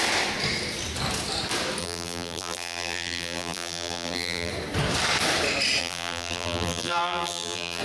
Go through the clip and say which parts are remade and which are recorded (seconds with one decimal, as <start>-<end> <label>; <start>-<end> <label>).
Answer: 0.0-1.8 recorded; 1.8-4.5 remade; 4.5-5.8 recorded; 5.8-7.8 remade